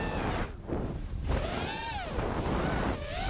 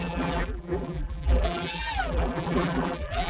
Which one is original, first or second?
first